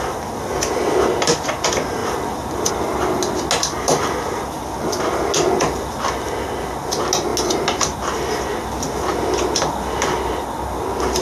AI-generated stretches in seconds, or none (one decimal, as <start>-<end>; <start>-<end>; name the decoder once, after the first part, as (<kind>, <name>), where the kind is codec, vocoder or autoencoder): none